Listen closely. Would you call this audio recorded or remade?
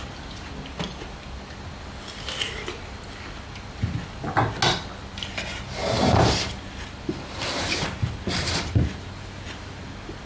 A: recorded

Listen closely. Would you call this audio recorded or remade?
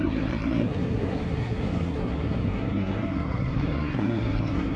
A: remade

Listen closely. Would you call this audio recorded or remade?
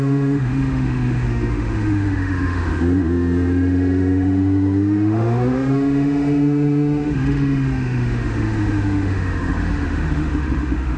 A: remade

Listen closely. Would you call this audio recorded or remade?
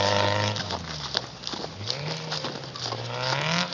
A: recorded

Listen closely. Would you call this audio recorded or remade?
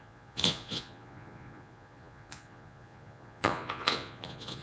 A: remade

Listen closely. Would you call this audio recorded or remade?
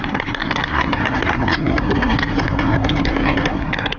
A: remade